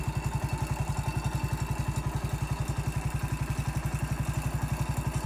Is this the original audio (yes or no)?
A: yes